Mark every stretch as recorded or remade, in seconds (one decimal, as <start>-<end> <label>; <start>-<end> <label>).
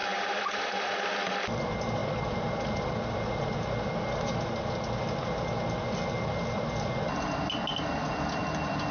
0.0-1.0 remade; 1.0-8.9 recorded